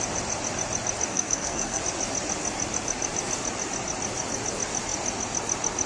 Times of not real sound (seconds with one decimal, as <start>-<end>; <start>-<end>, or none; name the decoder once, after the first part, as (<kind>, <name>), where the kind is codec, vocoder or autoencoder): 1.1-1.8 (codec, SNAC)